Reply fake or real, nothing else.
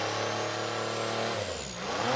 real